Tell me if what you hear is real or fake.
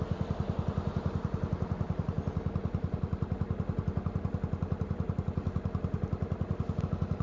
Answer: real